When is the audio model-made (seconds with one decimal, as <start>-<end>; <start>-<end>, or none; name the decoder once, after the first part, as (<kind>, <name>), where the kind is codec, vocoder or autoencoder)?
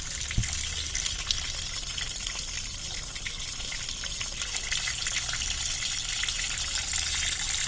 none